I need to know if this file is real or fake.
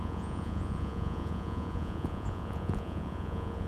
fake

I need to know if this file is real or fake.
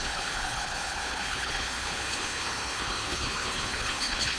fake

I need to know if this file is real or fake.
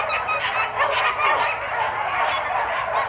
real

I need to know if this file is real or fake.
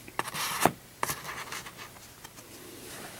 real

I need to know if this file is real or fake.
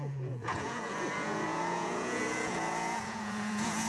fake